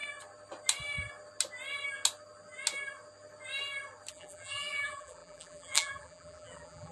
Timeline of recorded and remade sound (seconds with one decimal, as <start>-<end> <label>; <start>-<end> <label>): 0.0-4.1 recorded; 4.1-6.9 remade